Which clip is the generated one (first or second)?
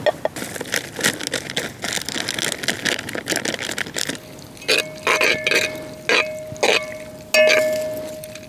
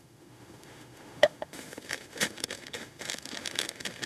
second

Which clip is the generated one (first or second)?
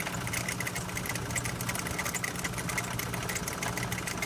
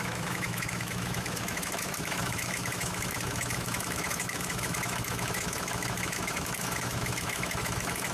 second